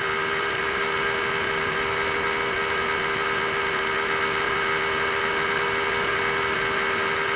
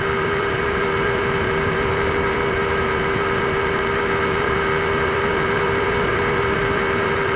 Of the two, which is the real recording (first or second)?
first